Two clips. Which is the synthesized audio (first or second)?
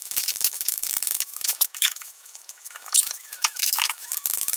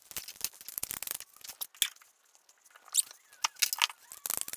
first